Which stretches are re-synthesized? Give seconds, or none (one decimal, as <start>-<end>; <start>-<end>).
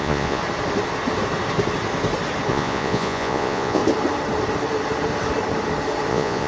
0.0-0.4; 2.5-3.8; 6.1-6.5